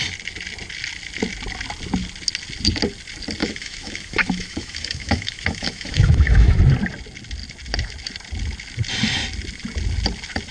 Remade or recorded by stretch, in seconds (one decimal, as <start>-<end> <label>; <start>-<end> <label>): 0.0-3.4 recorded; 3.4-6.6 remade; 6.6-10.5 recorded